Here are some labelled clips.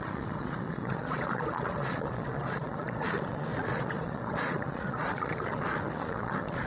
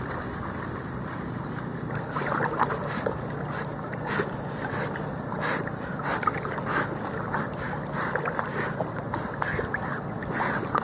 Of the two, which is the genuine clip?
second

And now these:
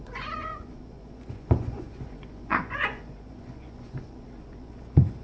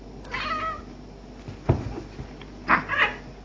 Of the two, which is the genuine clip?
second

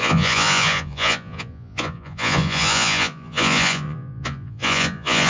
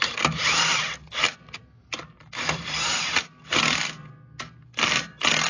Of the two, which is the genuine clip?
second